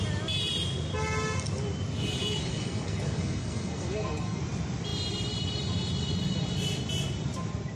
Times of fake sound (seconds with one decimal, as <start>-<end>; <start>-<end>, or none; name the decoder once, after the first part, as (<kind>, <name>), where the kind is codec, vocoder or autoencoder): 2.5-4.4 (codec, SNAC)